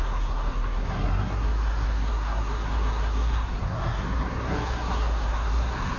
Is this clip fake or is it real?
fake